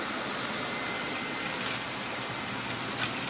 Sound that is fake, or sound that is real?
real